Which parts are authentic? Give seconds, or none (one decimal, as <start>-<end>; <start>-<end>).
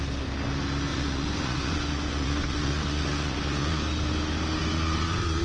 0.0-0.9; 3.8-4.6